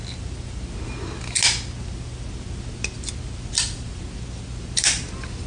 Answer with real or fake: real